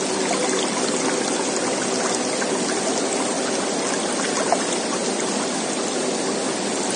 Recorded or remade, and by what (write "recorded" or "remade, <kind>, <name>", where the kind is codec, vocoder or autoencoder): recorded